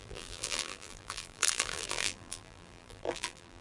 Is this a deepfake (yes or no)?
yes